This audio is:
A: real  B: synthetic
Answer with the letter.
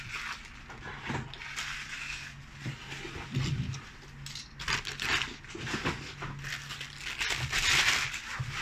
A